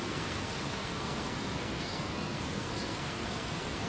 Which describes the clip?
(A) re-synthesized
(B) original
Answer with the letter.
A